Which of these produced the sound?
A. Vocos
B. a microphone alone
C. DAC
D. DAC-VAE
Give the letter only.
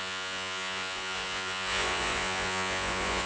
A